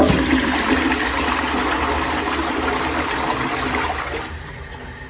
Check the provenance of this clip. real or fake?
real